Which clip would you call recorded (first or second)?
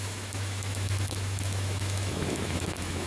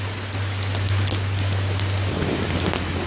second